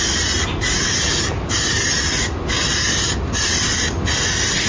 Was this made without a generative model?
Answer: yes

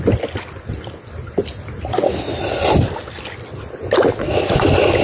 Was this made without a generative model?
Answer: yes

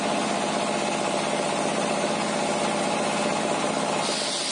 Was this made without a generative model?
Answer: yes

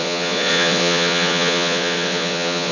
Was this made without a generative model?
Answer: no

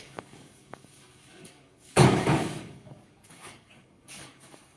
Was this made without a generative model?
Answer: no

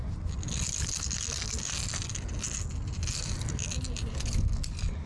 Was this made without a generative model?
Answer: yes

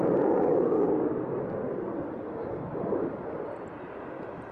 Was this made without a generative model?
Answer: yes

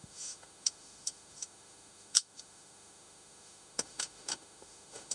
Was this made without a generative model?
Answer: no